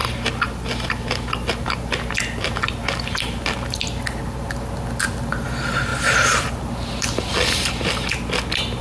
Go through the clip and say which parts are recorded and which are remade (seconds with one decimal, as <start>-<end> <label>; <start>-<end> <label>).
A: 0.0-8.8 recorded